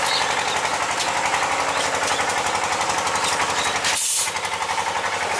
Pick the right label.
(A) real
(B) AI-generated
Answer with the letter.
A